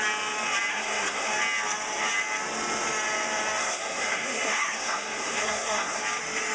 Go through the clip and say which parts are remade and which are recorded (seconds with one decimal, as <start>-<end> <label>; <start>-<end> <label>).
0.0-0.7 recorded; 0.7-1.3 remade; 1.3-3.6 recorded; 3.6-6.0 remade; 6.0-6.5 recorded